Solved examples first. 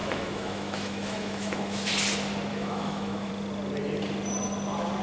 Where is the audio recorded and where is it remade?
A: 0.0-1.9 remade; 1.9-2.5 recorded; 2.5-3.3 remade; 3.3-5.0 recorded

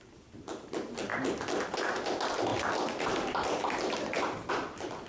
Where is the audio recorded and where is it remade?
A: 0.0-5.1 recorded

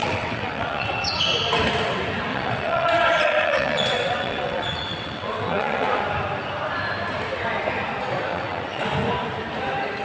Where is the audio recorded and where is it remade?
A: 0.0-1.2 remade; 1.2-2.3 recorded; 2.3-6.0 remade; 6.0-8.3 recorded; 8.3-8.8 remade; 8.8-10.0 recorded

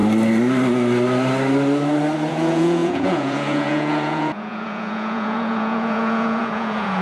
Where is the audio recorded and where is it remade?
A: 0.0-2.3 recorded; 2.3-7.0 remade

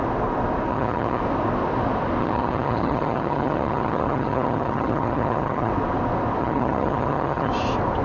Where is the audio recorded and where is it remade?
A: 0.0-0.7 recorded; 0.7-1.2 remade; 1.2-2.2 recorded; 2.2-5.7 remade; 5.7-6.4 recorded; 6.4-7.5 remade; 7.5-8.0 recorded

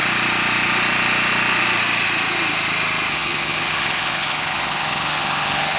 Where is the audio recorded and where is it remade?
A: 0.0-3.1 recorded; 3.1-5.8 remade

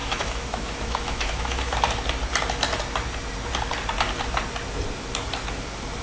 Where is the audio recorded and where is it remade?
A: 0.0-1.8 remade; 1.8-6.0 recorded